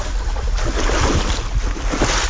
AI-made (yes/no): no